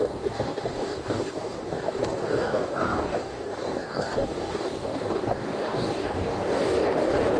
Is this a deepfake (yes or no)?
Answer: yes